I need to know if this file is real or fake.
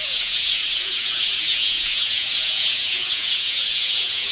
fake